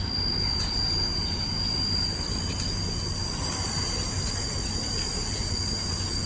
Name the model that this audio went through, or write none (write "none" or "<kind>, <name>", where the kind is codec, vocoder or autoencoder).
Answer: none